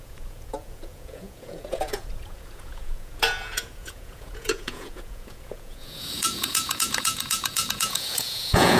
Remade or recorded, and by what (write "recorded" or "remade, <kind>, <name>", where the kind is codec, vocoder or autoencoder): remade, vocoder, Vocos